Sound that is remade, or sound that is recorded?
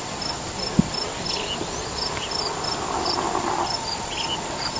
recorded